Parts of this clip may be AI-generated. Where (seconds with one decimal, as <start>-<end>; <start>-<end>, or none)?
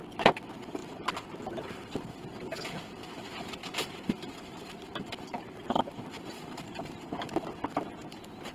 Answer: 3.6-7.0